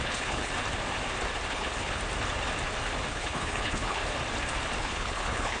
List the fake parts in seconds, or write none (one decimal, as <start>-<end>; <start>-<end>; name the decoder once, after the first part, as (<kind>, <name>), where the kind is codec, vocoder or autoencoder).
0.0-0.5 (codec, HILCodec); 1.5-2.0; 3.1-4.0; 4.8-5.6